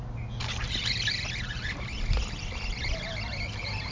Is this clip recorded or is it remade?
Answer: recorded